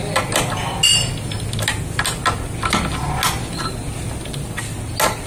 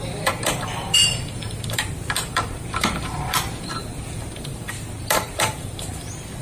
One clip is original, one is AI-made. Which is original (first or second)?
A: first